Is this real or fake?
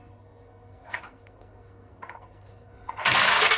fake